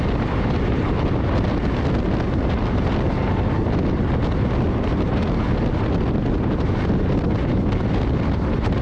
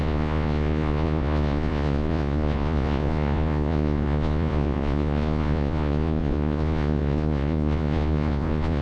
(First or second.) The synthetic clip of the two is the second